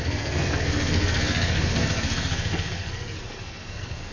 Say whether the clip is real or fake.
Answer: fake